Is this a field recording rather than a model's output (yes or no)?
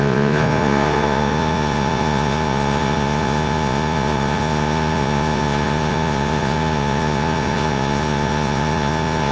no